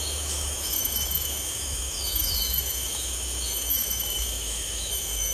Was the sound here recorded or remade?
remade